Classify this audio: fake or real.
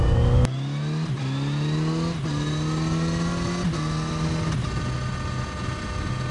real